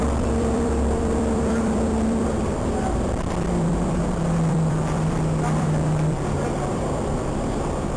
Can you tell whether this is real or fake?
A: fake